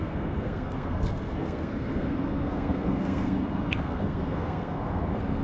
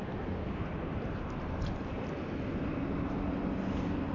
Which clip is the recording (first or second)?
second